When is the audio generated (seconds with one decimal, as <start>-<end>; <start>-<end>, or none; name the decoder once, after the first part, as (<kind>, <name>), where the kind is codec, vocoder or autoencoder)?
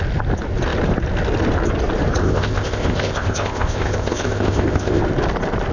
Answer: 2.2-5.0 (codec, ZipCodec)